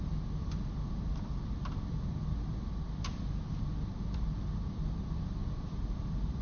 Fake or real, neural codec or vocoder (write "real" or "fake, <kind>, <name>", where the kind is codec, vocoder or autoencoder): fake, vocoder, BigVGAN v2